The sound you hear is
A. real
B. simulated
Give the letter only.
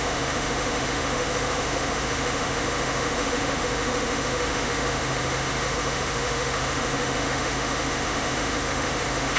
B